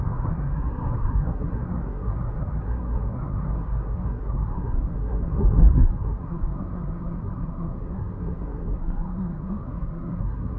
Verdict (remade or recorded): remade